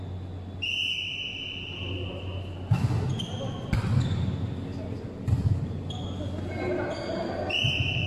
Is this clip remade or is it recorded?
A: recorded